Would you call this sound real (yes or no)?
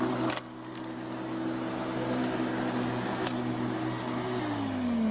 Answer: yes